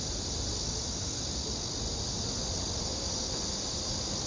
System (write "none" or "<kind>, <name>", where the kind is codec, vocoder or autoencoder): none